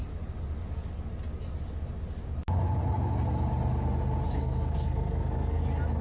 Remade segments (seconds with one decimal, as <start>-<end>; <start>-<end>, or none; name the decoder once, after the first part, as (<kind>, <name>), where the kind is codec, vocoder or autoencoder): 4.4-5.6 (codec, SNAC)